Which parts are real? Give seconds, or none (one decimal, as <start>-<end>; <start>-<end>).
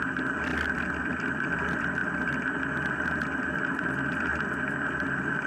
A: 0.5-1.0; 2.0-3.4; 4.3-5.0